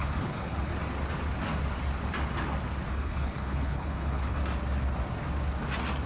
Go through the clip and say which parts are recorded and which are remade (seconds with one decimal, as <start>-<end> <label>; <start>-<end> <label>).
0.0-0.7 remade; 0.7-2.9 recorded; 2.9-4.4 remade; 4.4-6.1 recorded